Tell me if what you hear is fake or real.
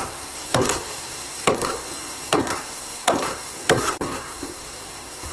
fake